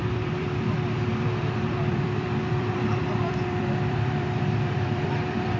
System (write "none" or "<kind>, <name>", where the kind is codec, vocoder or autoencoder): vocoder, BigVGAN v2